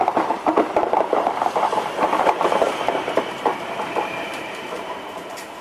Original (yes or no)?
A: no